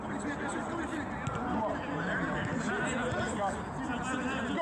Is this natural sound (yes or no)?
yes